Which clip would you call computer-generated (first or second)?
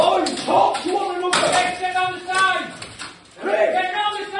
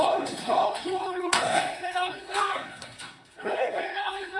second